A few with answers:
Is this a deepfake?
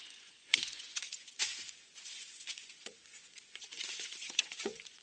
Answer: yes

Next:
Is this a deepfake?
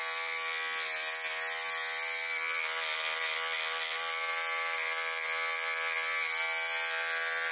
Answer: no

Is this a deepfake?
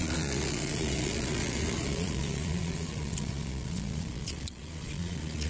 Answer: yes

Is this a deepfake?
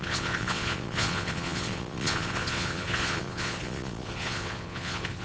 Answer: yes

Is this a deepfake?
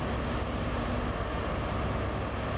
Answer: no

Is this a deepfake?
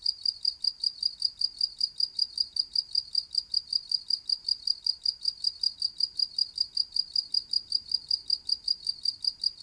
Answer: no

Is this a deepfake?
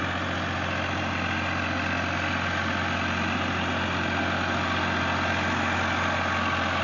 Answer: no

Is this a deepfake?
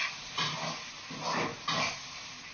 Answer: no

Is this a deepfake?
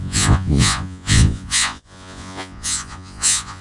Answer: yes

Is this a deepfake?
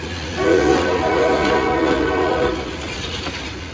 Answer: yes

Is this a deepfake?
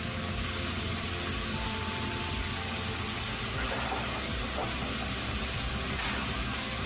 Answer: no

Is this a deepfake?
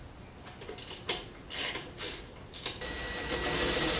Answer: no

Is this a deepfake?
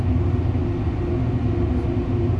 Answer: no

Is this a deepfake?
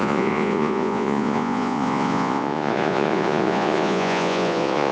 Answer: yes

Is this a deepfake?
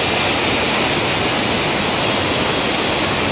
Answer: no